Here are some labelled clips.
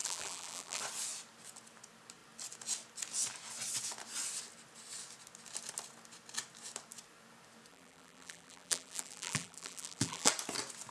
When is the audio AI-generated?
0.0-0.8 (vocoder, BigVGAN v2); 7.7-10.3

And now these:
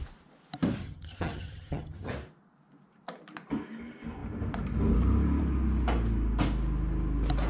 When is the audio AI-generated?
0.8-2.1 (vocoder, HiFi-GAN)

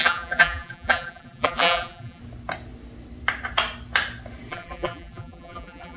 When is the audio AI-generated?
0.0-2.2 (vocoder, BigVGAN v2); 4.5-6.0

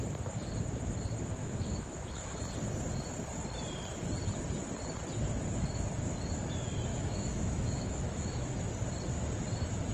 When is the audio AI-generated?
1.4-2.4 (autoencoder, DAC-VAE); 6.9-8.5

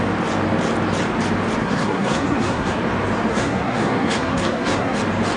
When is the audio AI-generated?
1.6-2.8 (codec, SNAC); 3.3-5.0